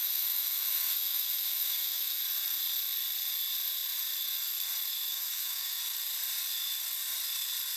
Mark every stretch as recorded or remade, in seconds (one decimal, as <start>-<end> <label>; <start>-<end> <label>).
0.0-2.2 remade; 2.2-5.1 recorded; 5.1-5.8 remade; 5.8-7.8 recorded